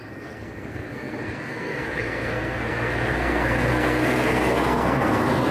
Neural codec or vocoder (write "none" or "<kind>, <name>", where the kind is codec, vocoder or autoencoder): codec, SNAC